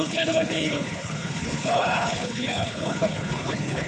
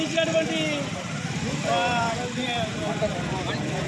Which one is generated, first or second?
first